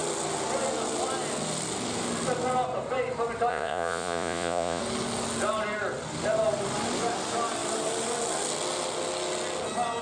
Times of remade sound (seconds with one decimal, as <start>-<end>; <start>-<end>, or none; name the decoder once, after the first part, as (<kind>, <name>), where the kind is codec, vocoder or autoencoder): 3.5-4.8 (vocoder, Vocos)